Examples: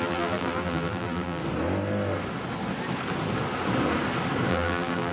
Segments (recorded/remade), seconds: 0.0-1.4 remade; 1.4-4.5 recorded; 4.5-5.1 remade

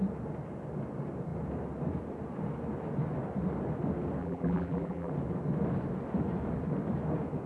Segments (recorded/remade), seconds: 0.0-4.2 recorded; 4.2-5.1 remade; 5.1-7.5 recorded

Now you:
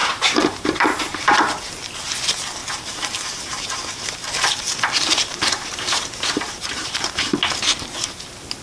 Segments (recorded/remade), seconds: 0.0-1.4 remade; 1.4-2.6 recorded; 2.6-7.1 remade; 7.1-8.6 recorded